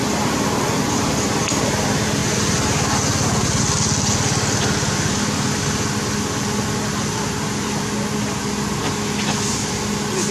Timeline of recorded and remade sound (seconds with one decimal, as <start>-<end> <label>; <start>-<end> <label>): 0.0-10.3 recorded